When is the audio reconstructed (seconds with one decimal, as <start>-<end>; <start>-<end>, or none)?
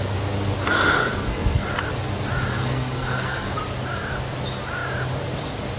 1.0-1.7; 2.5-3.5